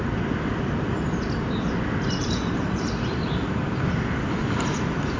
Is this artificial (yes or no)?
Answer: no